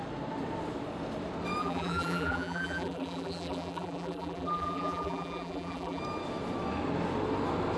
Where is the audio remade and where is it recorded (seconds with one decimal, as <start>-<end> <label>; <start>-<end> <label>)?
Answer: 0.0-1.6 recorded; 1.6-6.0 remade; 6.0-7.8 recorded